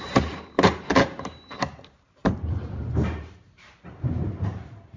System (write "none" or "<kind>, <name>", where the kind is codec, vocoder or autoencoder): vocoder, BigVGAN v2